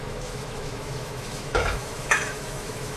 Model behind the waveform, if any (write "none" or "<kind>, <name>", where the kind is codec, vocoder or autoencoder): autoencoder, DAC-VAE